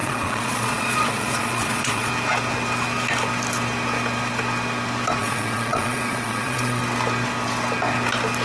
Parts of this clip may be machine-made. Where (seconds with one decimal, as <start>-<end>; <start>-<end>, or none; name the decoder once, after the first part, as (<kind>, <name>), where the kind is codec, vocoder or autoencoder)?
0.0-2.1 (vocoder, Vocos); 5.2-6.8